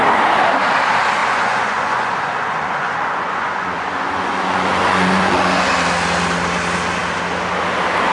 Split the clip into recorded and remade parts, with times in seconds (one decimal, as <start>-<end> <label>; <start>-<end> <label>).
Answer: 0.0-1.2 recorded; 1.2-5.7 remade; 5.7-8.1 recorded